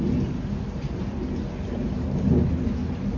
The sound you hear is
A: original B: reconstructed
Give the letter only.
A